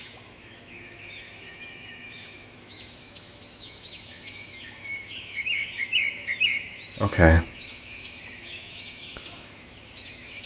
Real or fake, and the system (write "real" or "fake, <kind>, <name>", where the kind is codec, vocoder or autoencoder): fake, autoencoder, DAC-VAE